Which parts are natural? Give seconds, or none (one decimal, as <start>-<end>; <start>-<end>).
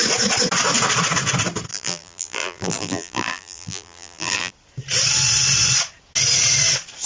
0.0-1.7; 4.5-7.1